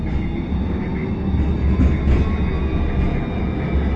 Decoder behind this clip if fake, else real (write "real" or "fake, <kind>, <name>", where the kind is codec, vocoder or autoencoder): real